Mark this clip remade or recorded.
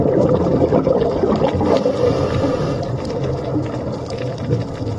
recorded